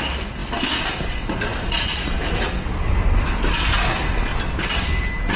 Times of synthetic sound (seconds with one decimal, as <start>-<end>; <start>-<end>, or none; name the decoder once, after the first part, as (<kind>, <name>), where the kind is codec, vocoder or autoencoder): none